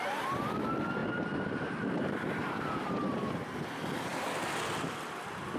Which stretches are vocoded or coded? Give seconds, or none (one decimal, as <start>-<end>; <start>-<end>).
1.0-3.4